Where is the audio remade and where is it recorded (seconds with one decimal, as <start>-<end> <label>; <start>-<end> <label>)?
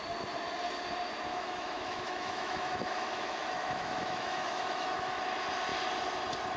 0.0-1.3 recorded; 1.3-5.2 remade; 5.2-6.6 recorded